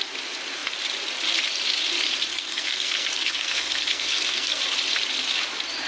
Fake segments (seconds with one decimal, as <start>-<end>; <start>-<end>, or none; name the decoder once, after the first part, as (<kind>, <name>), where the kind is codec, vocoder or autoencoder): 2.3-4.6 (codec, SNAC)

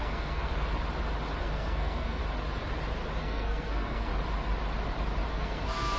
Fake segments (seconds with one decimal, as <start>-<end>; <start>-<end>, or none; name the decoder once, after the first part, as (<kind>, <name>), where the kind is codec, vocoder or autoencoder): 0.0-0.5 (codec, SNAC); 1.4-2.2; 3.2-4.1; 5.3-6.0

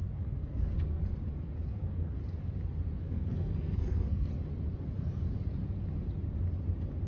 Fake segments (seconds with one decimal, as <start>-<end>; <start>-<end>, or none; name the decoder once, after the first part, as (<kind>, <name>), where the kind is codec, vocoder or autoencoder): 0.0-1.0 (codec, SNAC); 1.7-2.2; 3.0-4.3

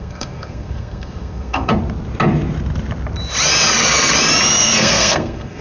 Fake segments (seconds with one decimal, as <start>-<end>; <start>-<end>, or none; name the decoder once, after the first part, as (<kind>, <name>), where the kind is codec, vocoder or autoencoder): 0.0-1.7 (codec, SNAC); 4.6-5.6

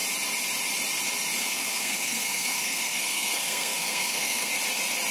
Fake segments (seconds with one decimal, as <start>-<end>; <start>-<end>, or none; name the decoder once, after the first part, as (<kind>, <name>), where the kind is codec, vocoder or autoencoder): 1.4-4.5 (codec, SNAC)